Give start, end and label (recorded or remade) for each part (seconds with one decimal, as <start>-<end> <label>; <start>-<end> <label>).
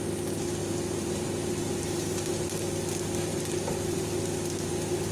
0.0-0.6 recorded; 0.6-2.3 remade; 2.3-3.3 recorded; 3.3-4.2 remade; 4.2-5.1 recorded